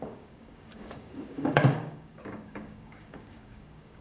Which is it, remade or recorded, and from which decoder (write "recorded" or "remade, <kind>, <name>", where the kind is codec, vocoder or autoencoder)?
remade, codec, DAC